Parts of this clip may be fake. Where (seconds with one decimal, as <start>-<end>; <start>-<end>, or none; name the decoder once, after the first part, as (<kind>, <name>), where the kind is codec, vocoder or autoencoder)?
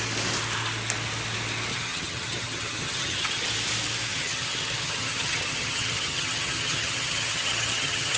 1.7-3.5 (vocoder, HiFi-GAN); 4.1-8.2